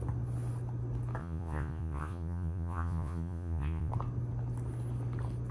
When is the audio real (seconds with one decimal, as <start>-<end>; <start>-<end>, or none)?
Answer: 0.0-1.2; 3.9-5.5